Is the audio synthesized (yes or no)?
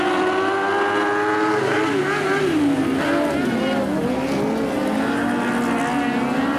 no